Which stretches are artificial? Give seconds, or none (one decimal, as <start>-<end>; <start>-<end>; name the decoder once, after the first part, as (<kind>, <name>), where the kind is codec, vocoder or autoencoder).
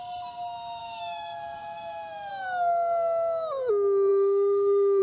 0.8-2.3 (codec, DAC); 4.1-5.0